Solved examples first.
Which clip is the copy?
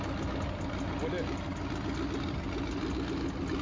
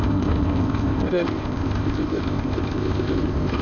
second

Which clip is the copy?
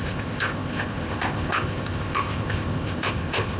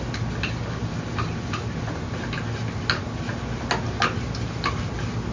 first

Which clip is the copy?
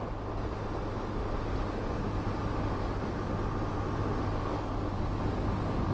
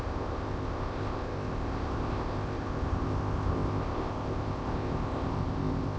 second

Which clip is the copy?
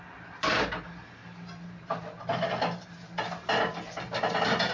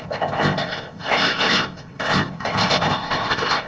second